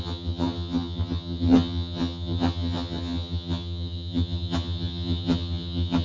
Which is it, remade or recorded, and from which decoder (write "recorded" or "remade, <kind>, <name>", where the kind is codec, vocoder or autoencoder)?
remade, vocoder, HiFi-GAN